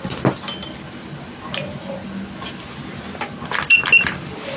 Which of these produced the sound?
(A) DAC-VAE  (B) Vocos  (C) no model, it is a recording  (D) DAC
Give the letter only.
C